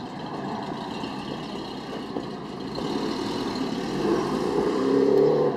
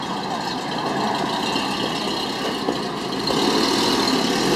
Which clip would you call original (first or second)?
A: second